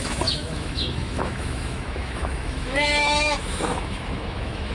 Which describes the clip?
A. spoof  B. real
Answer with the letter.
A